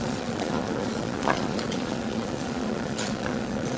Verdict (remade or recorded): remade